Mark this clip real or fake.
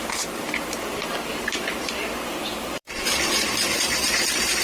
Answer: fake